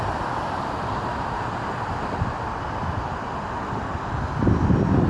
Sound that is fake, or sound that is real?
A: fake